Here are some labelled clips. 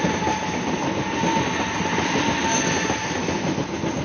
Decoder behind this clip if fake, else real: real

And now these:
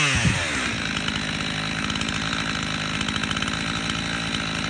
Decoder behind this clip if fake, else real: real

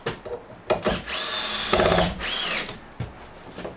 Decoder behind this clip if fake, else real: real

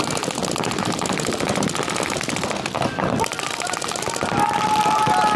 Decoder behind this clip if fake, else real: real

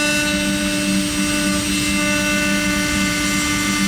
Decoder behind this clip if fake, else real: real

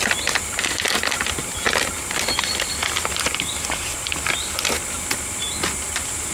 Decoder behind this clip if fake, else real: real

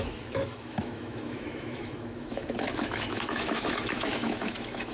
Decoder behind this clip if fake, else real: fake, autoencoder, DAC-VAE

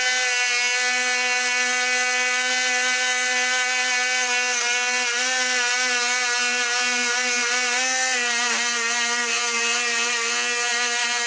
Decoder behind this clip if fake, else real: real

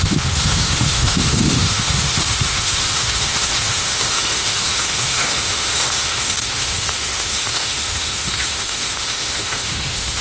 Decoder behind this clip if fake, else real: fake, autoencoder, DAC-VAE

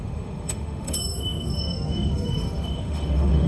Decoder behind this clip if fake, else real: fake, autoencoder, DAC-VAE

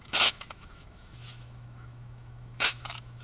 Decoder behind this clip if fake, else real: fake, autoencoder, DAC-VAE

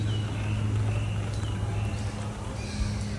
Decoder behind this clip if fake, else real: real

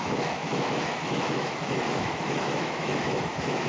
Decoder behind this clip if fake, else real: fake, autoencoder, DAC-VAE